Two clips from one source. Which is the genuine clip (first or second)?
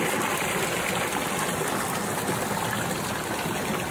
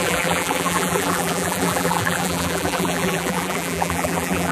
first